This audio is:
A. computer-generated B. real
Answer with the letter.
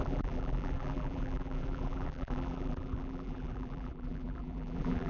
A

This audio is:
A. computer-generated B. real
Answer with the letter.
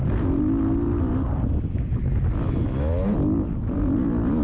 B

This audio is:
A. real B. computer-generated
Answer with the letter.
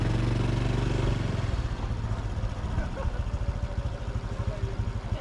A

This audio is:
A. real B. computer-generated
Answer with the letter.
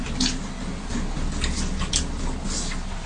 A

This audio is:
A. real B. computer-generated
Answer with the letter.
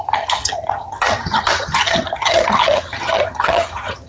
B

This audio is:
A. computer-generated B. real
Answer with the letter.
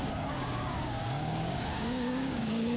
A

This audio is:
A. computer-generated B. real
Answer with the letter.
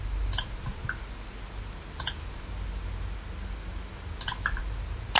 B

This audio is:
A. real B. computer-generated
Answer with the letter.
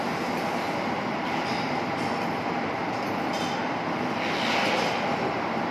A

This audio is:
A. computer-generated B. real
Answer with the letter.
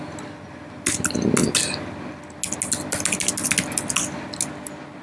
B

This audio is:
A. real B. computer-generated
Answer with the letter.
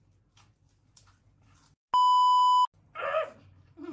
A